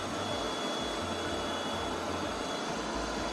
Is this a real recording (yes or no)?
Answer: yes